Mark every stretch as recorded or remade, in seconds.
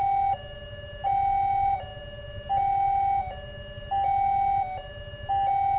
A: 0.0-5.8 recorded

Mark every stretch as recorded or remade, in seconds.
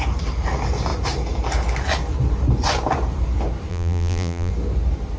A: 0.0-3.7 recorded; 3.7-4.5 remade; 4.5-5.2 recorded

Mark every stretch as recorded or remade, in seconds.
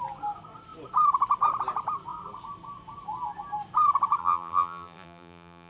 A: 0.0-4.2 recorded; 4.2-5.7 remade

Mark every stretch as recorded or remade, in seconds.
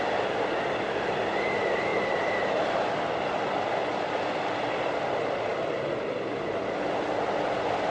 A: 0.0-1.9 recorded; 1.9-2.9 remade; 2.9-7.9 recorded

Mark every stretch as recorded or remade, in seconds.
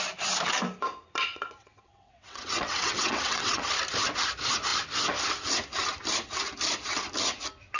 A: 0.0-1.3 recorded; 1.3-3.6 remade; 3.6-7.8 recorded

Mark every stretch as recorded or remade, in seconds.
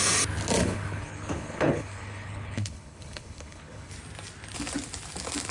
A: 0.0-0.6 recorded; 0.6-3.9 remade; 3.9-5.5 recorded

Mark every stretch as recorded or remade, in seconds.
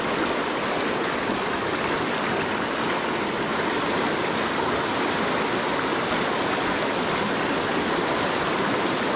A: 0.0-9.2 recorded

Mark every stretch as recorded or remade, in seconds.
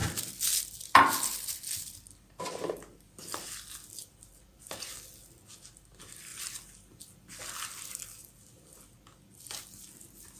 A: 0.0-10.4 recorded